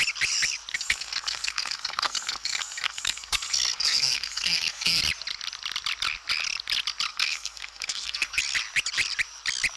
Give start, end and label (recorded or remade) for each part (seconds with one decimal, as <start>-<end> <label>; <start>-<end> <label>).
0.0-0.7 recorded; 0.7-5.0 remade; 5.0-7.1 recorded; 7.1-8.4 remade; 8.4-9.8 recorded